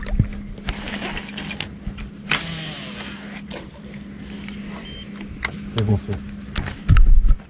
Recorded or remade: recorded